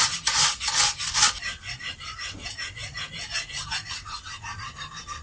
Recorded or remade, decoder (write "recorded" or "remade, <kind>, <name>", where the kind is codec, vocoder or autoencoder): recorded